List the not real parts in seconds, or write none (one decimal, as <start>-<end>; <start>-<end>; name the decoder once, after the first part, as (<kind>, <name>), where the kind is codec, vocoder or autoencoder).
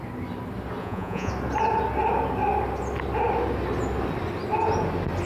0.8-1.3 (vocoder, Vocos)